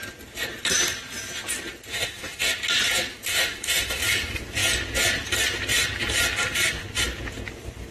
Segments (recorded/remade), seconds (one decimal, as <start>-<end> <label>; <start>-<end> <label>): 0.0-1.9 recorded; 1.9-2.5 remade; 2.5-3.3 recorded; 3.3-4.0 remade; 4.0-7.9 recorded